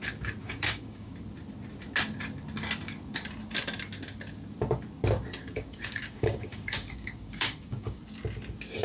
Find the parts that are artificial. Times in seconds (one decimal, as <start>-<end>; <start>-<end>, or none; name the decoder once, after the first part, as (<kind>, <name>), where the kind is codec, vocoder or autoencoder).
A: 0.4-1.1 (codec, DAC); 5.4-8.0